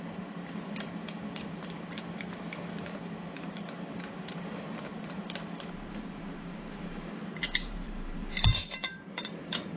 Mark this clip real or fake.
fake